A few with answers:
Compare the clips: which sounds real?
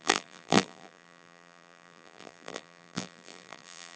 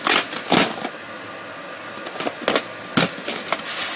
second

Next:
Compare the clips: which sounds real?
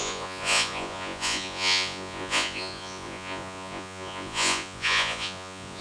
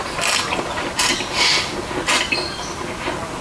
second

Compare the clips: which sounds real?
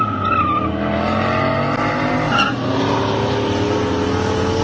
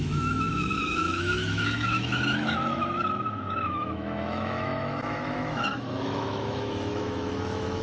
first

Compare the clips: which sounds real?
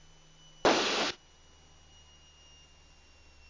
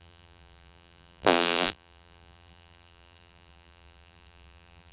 first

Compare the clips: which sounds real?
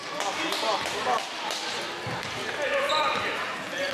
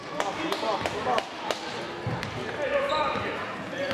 second